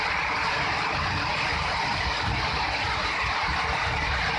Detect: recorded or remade recorded